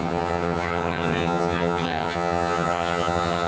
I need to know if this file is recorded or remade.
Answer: remade